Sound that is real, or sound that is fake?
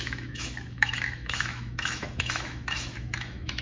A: fake